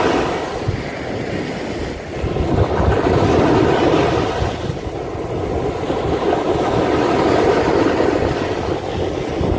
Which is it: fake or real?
real